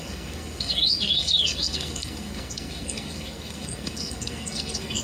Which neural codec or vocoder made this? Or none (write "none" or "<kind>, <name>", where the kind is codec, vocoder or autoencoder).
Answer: codec, SNAC